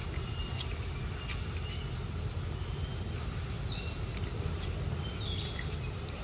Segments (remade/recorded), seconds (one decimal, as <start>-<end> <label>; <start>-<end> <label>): 0.0-6.2 recorded